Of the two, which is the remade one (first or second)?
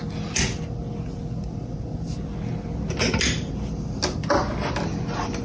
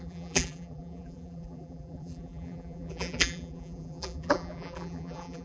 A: second